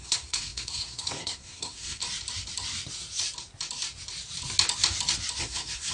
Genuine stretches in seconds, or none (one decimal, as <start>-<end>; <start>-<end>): 2.0-5.4